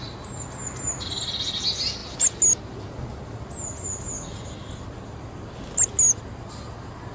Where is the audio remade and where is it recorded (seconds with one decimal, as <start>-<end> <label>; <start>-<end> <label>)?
0.0-7.1 recorded